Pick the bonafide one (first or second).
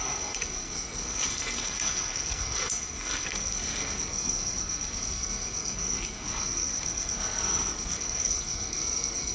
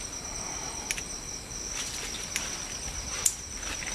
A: second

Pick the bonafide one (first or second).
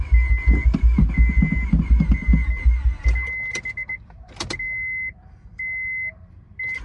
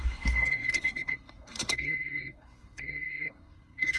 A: first